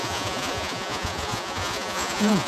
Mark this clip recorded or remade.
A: remade